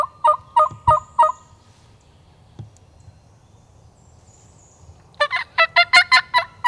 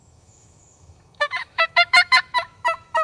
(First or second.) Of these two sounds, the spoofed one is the second